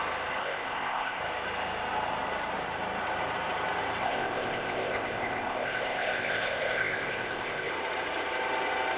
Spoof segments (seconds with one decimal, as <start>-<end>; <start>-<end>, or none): 0.4-1.2; 4.0-7.7